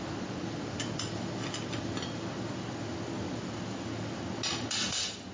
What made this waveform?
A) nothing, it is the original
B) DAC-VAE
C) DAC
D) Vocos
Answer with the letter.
A